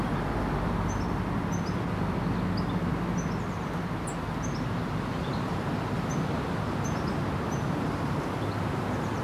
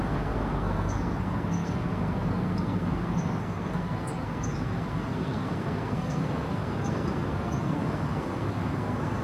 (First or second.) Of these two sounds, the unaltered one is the first